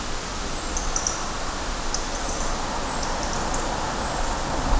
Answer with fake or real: real